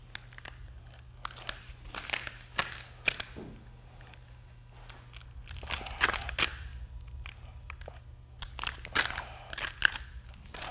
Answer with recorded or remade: recorded